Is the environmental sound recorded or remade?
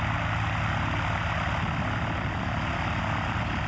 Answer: recorded